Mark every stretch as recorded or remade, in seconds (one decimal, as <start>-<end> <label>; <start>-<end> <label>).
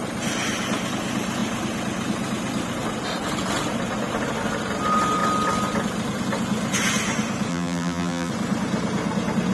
0.0-7.5 recorded; 7.5-8.3 remade; 8.3-9.5 recorded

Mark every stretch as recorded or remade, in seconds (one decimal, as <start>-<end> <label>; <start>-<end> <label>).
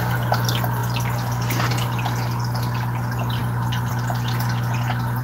0.0-5.2 recorded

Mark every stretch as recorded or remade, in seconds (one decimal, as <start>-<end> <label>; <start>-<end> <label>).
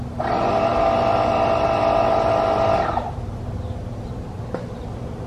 0.0-5.3 recorded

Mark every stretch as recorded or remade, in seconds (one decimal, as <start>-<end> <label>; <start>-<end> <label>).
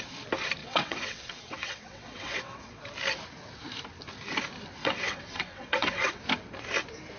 0.0-0.6 recorded; 0.6-2.8 remade; 2.8-4.8 recorded; 4.8-6.2 remade; 6.2-7.2 recorded